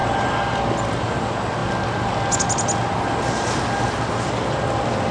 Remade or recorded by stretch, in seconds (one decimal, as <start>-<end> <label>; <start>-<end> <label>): 0.0-5.1 recorded